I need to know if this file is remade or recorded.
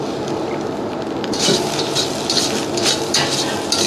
remade